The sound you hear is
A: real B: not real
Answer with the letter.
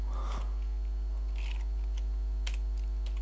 A